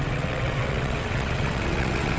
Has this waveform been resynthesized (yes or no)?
yes